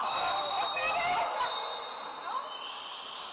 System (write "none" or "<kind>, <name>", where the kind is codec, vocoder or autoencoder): none